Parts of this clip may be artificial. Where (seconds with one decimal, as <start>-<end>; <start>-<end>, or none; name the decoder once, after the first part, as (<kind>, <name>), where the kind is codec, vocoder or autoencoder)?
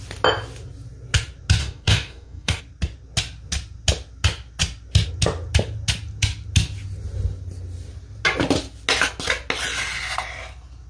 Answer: 1.6-2.6 (codec, DAC)